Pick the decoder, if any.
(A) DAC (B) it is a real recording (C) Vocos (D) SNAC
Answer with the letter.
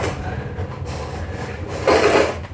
B